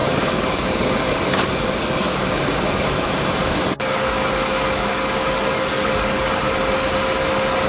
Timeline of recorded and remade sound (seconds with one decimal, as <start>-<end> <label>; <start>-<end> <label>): 0.0-2.9 remade; 2.9-3.4 recorded; 3.4-6.4 remade; 6.4-7.7 recorded